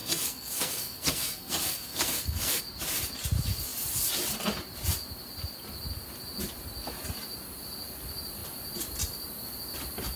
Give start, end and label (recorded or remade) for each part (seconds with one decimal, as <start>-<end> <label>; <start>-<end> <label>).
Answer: 0.0-2.6 remade; 2.6-10.2 recorded